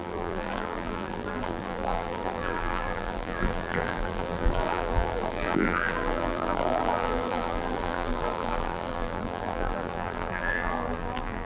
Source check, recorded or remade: remade